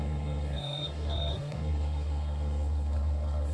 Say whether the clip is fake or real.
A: fake